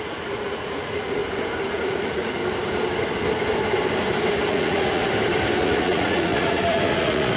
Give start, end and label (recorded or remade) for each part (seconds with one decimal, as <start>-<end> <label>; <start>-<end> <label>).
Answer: 0.0-1.2 remade; 1.2-1.7 recorded; 1.7-2.4 remade; 2.4-4.5 recorded; 4.5-5.0 remade; 5.0-5.6 recorded; 5.6-7.4 remade